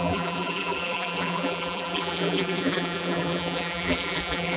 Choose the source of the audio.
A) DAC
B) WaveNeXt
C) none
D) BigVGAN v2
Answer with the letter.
D